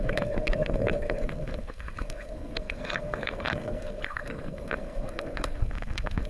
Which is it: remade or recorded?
remade